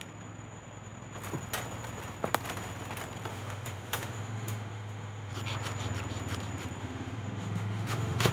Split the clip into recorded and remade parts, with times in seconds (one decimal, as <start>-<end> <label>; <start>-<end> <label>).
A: 0.0-3.3 recorded; 3.3-5.3 remade; 5.3-6.8 recorded; 6.8-8.3 remade